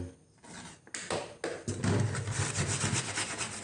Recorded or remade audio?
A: recorded